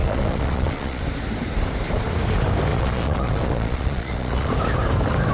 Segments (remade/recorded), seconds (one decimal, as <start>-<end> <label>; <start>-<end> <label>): 0.0-1.0 remade; 1.0-2.7 recorded; 2.7-4.5 remade; 4.5-5.3 recorded